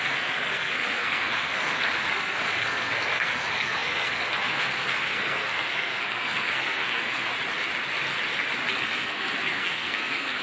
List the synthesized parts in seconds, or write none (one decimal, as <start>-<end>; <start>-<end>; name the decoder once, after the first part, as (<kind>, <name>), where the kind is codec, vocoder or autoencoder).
0.0-7.3 (codec, SNAC); 8.7-10.4